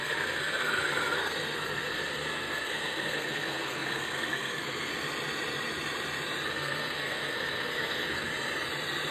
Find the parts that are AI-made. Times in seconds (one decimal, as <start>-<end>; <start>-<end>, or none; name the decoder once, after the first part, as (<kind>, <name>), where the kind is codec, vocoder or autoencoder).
0.0-4.9 (codec, SNAC); 6.5-8.3